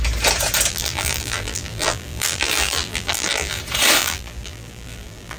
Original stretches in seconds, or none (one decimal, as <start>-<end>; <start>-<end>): 0.0-0.7; 3.6-4.0